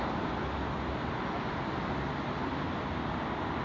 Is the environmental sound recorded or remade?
recorded